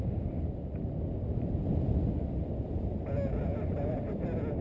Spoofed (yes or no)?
no